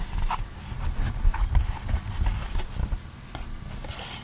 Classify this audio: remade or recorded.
recorded